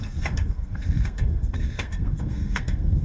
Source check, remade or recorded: remade